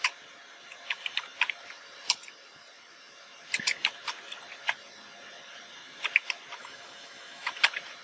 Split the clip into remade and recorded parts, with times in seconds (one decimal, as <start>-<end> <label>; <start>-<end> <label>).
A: 0.0-6.6 recorded; 6.6-7.5 remade; 7.5-8.0 recorded